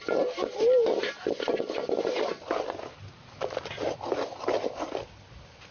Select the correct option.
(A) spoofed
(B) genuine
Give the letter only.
B